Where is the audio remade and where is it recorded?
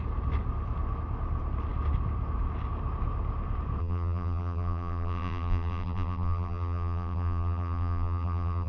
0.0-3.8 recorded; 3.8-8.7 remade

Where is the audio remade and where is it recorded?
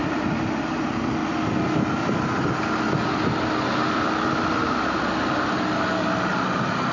0.0-6.9 recorded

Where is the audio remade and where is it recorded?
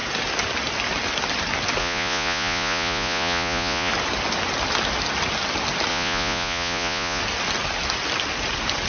0.0-1.8 recorded; 1.8-3.9 remade; 3.9-5.9 recorded; 5.9-7.2 remade; 7.2-8.9 recorded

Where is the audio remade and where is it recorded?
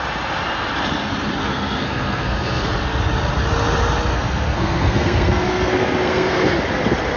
0.0-1.4 recorded; 1.4-2.7 remade; 2.7-4.1 recorded; 4.1-6.5 remade; 6.5-7.2 recorded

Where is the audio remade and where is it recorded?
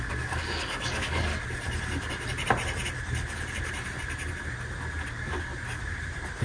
0.0-1.3 remade; 1.3-5.1 recorded; 5.1-5.5 remade; 5.5-6.4 recorded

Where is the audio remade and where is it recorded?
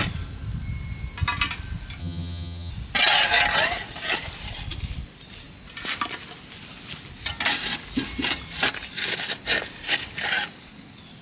0.0-2.0 recorded; 2.0-2.7 remade; 2.7-11.2 recorded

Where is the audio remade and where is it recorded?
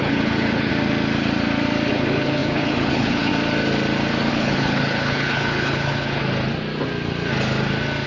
0.0-0.7 remade; 0.7-1.9 recorded; 1.9-3.3 remade; 3.3-4.3 recorded; 4.3-6.2 remade; 6.2-8.1 recorded